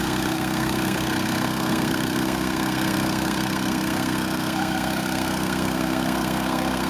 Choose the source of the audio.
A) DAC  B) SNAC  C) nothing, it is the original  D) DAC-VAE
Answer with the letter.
B